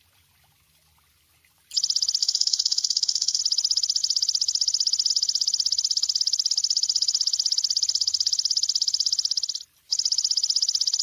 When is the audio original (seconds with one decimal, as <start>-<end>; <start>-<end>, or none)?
0.0-2.2; 3.4-11.0